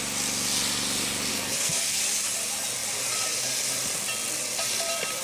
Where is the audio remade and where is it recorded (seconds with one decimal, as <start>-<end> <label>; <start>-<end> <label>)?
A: 0.0-1.3 recorded; 1.3-2.0 remade; 2.0-5.2 recorded